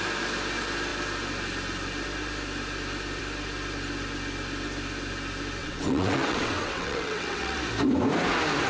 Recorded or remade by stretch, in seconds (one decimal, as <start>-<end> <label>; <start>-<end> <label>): 0.0-5.6 recorded; 5.6-7.6 remade; 7.6-8.7 recorded